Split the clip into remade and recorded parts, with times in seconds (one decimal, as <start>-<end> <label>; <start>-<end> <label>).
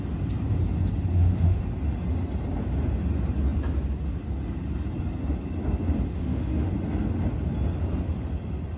0.0-1.1 recorded; 1.1-1.6 remade; 1.6-6.1 recorded; 6.1-6.7 remade; 6.7-8.8 recorded